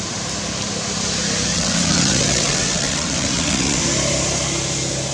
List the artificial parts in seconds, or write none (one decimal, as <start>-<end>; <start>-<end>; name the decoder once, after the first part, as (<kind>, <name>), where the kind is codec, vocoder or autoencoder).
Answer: 1.5-3.8 (vocoder, WaveNeXt)